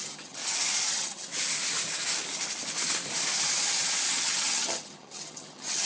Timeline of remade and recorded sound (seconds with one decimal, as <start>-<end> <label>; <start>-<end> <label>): 0.0-0.4 remade; 0.4-0.9 recorded; 0.9-1.3 remade; 1.3-4.1 recorded; 4.1-5.9 remade